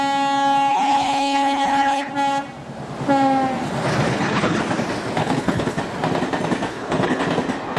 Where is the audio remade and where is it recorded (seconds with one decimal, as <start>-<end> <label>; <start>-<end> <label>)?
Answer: 0.0-0.7 recorded; 0.7-2.1 remade; 2.1-4.1 recorded; 4.1-4.6 remade; 4.6-5.2 recorded; 5.2-5.8 remade; 5.8-6.7 recorded; 6.7-7.2 remade; 7.2-7.8 recorded